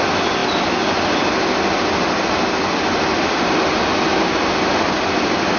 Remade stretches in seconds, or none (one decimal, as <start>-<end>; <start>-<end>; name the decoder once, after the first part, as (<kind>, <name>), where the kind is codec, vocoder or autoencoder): none